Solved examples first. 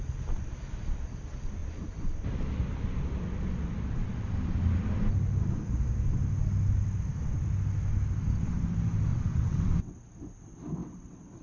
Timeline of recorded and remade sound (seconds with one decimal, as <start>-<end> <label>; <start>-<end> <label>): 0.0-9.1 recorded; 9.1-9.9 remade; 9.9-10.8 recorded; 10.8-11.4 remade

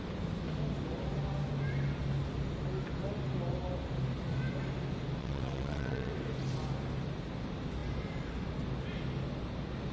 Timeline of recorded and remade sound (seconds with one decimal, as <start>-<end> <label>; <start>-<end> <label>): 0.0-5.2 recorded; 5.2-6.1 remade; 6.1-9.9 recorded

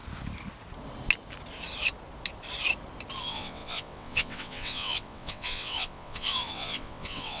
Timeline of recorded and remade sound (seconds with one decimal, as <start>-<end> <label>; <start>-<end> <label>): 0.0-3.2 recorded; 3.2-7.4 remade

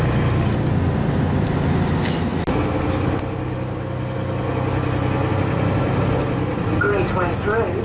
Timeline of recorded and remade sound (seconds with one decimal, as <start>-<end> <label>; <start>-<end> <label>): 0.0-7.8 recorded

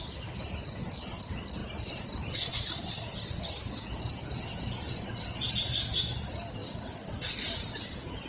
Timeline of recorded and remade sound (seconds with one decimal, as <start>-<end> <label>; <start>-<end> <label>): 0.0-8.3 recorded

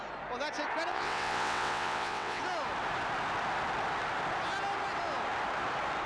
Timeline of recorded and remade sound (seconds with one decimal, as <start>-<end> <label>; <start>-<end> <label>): 0.0-0.9 recorded; 0.9-2.4 remade; 2.4-6.1 recorded

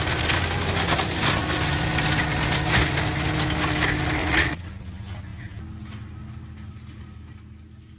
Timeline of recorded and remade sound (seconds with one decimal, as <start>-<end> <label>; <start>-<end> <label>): 0.0-4.2 recorded; 4.2-4.7 remade; 4.7-8.0 recorded